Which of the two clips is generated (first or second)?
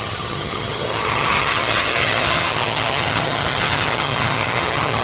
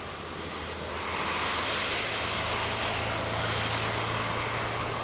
first